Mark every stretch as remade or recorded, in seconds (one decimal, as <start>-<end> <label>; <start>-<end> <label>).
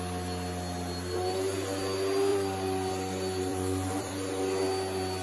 0.0-2.3 recorded; 2.3-2.9 remade; 2.9-3.5 recorded; 3.5-4.3 remade; 4.3-5.2 recorded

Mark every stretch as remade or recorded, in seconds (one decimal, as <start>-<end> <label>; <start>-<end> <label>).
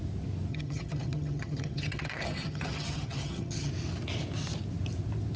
0.0-0.5 recorded; 0.5-3.7 remade; 3.7-5.4 recorded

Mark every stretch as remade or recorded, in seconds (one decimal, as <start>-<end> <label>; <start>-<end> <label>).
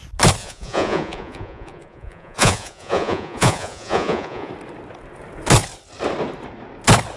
0.0-0.4 recorded; 0.4-4.5 remade; 4.5-7.2 recorded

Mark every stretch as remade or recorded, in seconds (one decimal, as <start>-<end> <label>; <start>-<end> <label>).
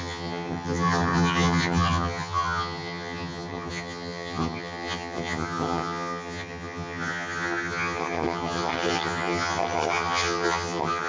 0.0-11.1 remade